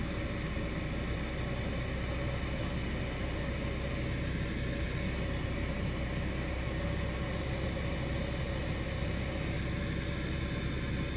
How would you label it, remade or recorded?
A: recorded